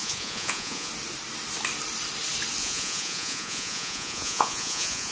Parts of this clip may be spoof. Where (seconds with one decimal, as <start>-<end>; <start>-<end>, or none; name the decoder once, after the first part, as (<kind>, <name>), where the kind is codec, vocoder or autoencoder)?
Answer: 0.0-0.9 (vocoder, Vocos); 2.6-5.1